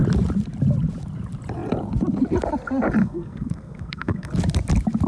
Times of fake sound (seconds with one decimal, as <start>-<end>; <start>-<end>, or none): 3.0-4.3